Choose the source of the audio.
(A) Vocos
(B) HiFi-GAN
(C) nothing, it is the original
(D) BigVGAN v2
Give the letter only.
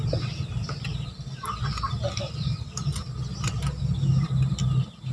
C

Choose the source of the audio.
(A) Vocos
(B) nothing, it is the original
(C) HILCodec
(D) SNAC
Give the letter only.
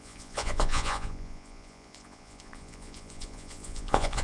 A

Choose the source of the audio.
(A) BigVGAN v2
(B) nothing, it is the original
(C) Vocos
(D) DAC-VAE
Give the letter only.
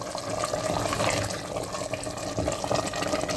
B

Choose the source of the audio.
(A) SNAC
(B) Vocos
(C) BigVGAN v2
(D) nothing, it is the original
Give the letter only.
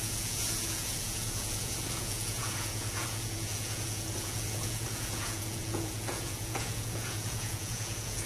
B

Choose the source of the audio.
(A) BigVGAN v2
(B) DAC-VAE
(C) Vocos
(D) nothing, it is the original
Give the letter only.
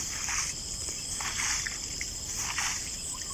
D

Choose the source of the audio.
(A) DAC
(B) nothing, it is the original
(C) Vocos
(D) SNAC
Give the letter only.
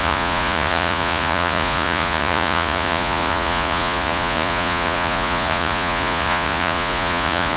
C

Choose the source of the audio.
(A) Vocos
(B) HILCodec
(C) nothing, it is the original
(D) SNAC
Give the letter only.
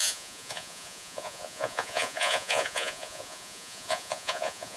A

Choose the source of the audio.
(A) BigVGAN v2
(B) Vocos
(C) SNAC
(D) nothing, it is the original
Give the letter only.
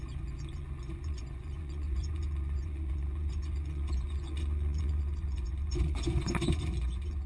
B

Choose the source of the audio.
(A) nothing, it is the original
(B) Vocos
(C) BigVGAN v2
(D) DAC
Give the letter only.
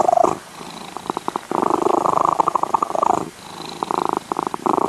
A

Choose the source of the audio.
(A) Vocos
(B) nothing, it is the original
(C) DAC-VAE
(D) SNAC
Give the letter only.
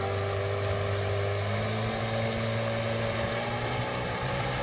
B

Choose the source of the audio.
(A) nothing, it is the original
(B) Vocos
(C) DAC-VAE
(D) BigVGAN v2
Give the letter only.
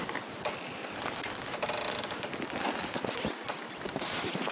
A